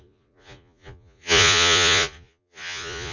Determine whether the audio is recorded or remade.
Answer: remade